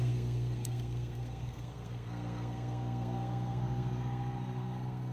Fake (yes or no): yes